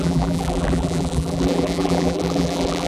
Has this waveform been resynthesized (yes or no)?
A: yes